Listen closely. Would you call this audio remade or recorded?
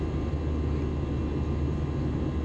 recorded